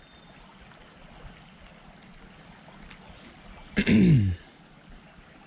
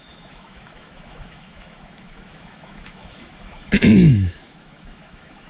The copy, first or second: second